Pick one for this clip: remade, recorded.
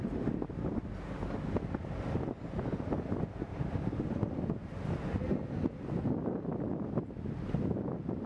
recorded